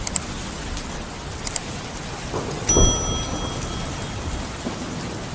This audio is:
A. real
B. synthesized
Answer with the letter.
A